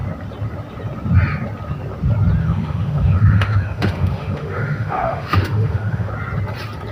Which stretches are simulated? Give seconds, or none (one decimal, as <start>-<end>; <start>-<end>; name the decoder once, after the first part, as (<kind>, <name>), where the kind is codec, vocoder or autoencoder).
2.4-6.1 (autoencoder, DAC-VAE)